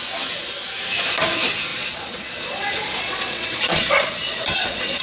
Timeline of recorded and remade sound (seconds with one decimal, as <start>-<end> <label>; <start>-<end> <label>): 0.0-1.7 recorded; 1.7-5.0 remade